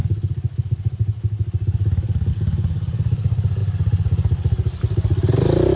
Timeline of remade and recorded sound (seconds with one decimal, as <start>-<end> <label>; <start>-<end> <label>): 0.0-5.8 recorded